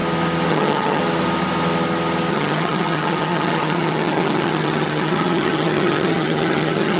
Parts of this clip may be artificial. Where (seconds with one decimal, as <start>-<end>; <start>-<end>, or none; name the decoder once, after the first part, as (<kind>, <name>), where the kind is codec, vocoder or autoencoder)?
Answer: 0.5-1.0 (vocoder, HiFi-GAN); 2.3-7.0